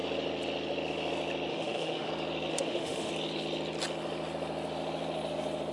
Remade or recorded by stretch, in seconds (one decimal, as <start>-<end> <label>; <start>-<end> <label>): 0.0-1.5 recorded; 1.5-2.1 remade; 2.1-2.5 recorded; 2.5-3.1 remade; 3.1-5.7 recorded